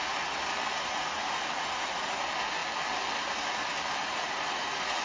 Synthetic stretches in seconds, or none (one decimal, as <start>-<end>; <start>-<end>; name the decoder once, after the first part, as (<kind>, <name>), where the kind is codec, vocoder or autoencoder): 0.7-2.1 (vocoder, Vocos); 4.0-5.0

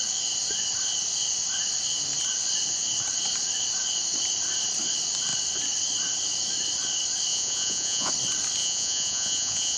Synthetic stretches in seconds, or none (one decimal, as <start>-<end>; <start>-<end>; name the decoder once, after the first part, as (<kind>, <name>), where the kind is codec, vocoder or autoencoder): 7.3-8.1 (vocoder, Vocos); 8.6-9.8

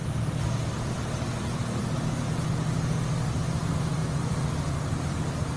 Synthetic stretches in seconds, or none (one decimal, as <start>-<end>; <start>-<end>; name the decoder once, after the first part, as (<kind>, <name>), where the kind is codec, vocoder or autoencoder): 4.0-4.7 (vocoder, Vocos)

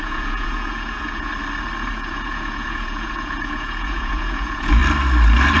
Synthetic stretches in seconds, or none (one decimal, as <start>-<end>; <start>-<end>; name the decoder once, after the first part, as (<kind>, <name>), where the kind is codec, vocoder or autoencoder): 0.0-1.3 (vocoder, Vocos); 1.9-4.8

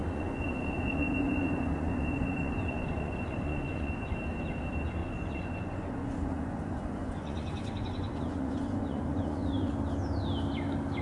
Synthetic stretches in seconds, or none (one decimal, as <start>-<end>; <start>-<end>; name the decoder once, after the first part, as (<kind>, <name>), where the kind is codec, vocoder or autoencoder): 0.0-3.9 (vocoder, Vocos); 5.0-9.7

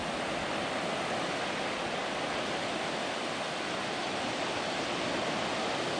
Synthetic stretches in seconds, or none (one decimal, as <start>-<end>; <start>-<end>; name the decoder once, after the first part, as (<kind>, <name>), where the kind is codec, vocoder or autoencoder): none